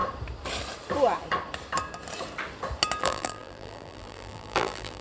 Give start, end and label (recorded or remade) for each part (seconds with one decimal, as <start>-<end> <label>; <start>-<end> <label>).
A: 0.0-3.0 recorded; 3.0-5.0 remade